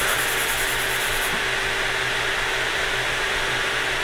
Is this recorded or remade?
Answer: recorded